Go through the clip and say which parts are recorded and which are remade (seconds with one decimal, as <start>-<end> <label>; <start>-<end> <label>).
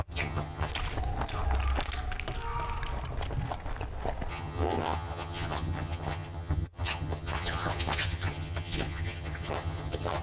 0.0-0.7 remade; 0.7-4.3 recorded; 4.3-10.2 remade